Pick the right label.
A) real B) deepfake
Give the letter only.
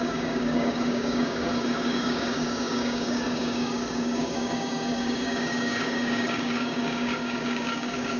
B